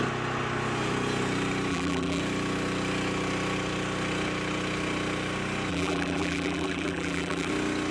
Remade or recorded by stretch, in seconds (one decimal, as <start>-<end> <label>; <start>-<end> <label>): 0.0-1.7 recorded; 1.7-2.2 remade; 2.2-5.7 recorded; 5.7-7.5 remade; 7.5-7.9 recorded